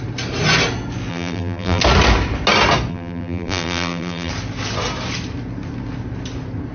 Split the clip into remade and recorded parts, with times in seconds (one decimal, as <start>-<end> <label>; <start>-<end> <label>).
0.0-1.1 recorded; 1.1-1.8 remade; 1.8-2.9 recorded; 2.9-4.3 remade; 4.3-6.7 recorded